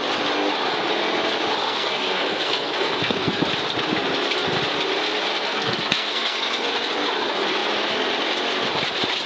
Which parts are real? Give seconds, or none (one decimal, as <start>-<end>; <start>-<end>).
0.0-1.6; 3.4-5.3; 6.7-9.3